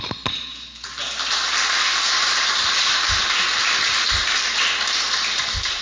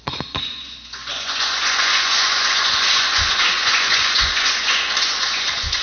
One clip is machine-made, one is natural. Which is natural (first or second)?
first